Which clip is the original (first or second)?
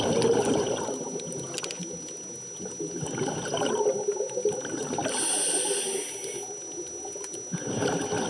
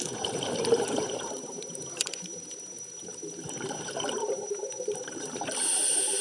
first